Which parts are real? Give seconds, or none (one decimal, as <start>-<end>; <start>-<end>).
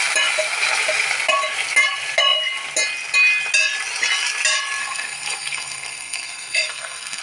0.0-4.8